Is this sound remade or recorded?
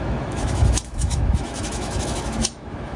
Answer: remade